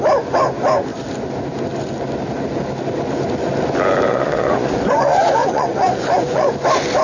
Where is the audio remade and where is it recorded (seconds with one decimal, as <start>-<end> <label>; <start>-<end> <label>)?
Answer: 0.0-4.1 recorded; 4.1-6.5 remade; 6.5-7.0 recorded